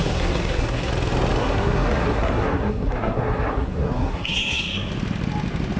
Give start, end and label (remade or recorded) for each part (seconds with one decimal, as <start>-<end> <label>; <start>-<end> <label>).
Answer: 0.0-0.9 remade; 0.9-1.4 recorded; 1.4-4.9 remade; 4.9-5.8 recorded